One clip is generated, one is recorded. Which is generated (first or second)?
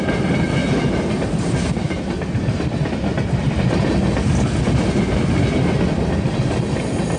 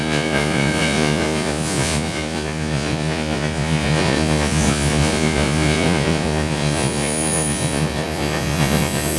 second